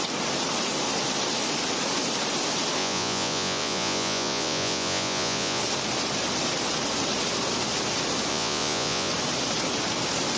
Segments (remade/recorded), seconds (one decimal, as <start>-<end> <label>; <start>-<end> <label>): 0.0-2.8 recorded; 2.8-5.6 remade; 5.6-8.3 recorded; 8.3-9.1 remade; 9.1-10.4 recorded